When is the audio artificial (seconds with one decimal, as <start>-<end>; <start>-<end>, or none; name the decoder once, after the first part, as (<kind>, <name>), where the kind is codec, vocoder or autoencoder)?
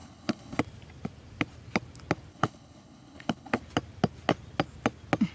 0.0-0.6 (codec, HILCodec); 2.3-3.6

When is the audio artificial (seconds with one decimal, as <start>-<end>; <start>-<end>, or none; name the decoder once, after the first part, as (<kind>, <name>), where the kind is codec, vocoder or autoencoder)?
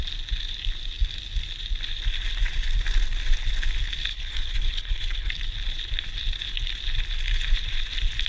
4.1-5.3 (codec, HILCodec)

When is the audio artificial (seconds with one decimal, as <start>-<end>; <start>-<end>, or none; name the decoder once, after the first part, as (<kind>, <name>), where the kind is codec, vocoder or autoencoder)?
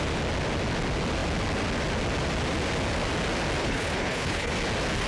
3.6-4.5 (codec, HILCodec)